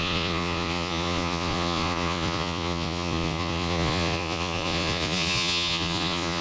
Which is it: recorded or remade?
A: remade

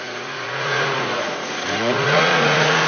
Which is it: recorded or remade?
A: remade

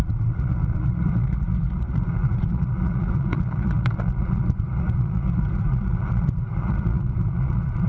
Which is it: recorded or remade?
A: remade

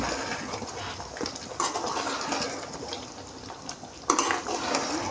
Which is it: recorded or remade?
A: recorded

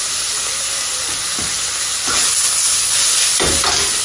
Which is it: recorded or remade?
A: recorded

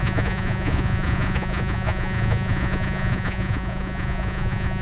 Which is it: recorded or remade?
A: remade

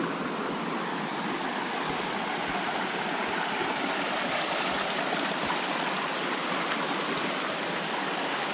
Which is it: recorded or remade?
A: recorded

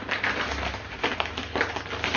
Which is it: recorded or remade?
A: recorded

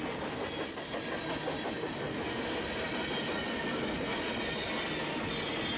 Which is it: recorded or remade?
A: recorded